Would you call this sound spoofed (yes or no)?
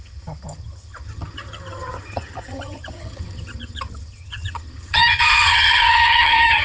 yes